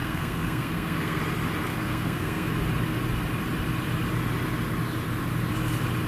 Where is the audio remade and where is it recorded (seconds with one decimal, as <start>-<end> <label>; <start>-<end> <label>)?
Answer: 0.0-1.2 remade; 1.2-1.7 recorded; 1.7-2.5 remade; 2.5-6.1 recorded